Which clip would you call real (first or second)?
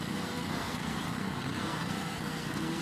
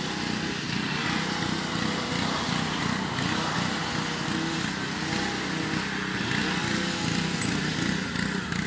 second